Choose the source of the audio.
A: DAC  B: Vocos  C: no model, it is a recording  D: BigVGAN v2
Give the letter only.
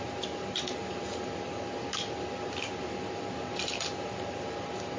C